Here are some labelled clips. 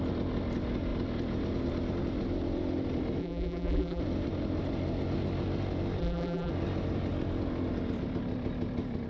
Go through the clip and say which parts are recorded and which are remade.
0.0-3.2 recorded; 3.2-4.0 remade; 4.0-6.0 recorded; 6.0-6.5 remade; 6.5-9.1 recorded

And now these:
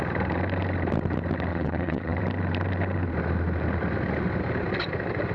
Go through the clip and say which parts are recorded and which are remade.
0.0-1.5 recorded; 1.5-2.2 remade; 2.2-5.3 recorded

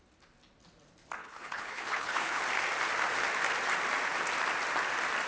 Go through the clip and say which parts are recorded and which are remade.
0.0-1.2 recorded; 1.2-2.4 remade; 2.4-5.3 recorded